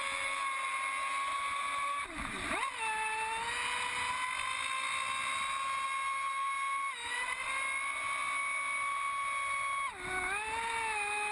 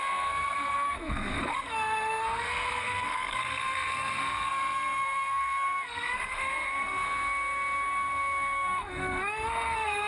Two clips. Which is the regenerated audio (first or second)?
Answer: second